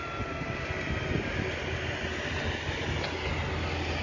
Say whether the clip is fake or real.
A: real